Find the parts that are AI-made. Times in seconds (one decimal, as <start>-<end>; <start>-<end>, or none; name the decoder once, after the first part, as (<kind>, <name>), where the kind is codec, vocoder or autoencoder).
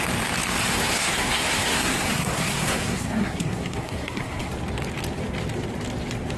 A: 0.7-4.5 (codec, SNAC)